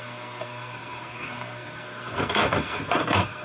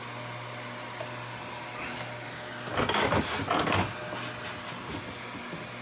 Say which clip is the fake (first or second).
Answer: first